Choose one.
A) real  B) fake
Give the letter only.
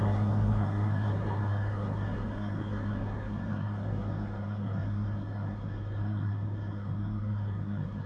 B